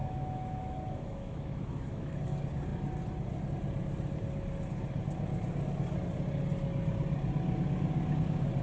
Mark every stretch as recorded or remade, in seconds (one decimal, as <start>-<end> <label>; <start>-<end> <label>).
0.0-2.2 remade; 2.2-8.6 recorded